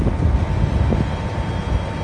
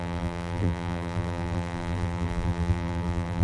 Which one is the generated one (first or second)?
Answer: second